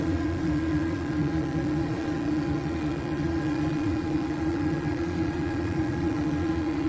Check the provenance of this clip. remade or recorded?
remade